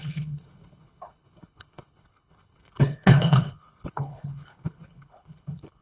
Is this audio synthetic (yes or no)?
yes